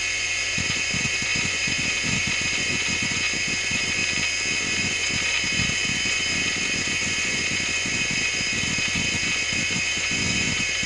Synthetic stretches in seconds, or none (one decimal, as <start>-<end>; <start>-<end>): 0.0-4.0; 4.6-10.9